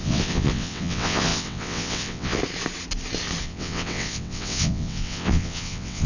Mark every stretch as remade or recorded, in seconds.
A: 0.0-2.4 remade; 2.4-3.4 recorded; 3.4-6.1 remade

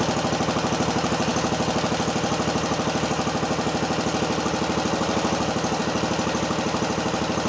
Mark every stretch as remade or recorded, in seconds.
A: 0.0-7.5 recorded

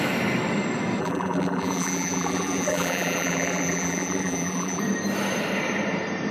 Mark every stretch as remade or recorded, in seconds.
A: 0.0-1.0 recorded; 1.0-4.8 remade; 4.8-6.3 recorded

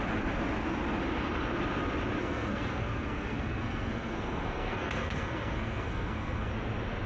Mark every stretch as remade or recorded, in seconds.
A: 0.0-2.2 recorded; 2.2-6.5 remade; 6.5-7.1 recorded

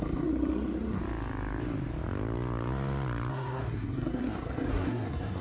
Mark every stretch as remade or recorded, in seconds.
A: 0.0-1.0 remade; 1.0-3.3 recorded; 3.3-5.4 remade